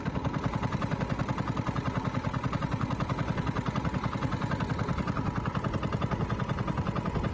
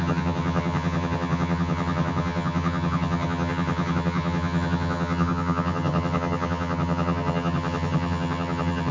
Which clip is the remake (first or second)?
second